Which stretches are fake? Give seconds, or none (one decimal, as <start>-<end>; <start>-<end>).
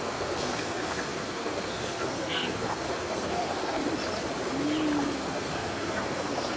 0.0-3.8; 5.0-6.6